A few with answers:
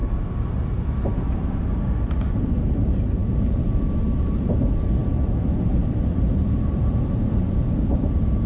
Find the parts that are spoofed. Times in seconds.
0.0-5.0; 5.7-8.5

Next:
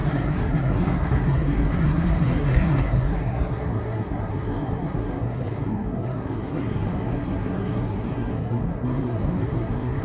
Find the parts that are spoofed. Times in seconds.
0.0-10.0

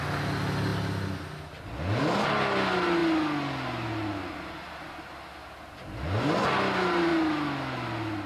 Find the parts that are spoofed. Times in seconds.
none